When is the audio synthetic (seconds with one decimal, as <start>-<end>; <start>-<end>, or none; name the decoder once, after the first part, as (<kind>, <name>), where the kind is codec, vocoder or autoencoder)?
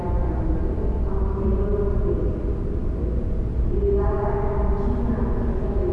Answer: none